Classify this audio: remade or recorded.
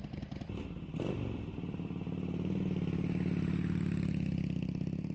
recorded